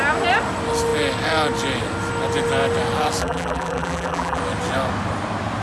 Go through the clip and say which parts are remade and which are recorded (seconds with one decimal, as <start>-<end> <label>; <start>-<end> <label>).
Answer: 0.0-3.2 recorded; 3.2-4.4 remade; 4.4-5.6 recorded